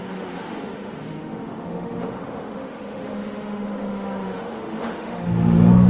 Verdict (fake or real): fake